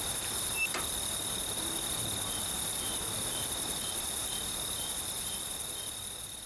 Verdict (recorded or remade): remade